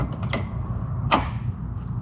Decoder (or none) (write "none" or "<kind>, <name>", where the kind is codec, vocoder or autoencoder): none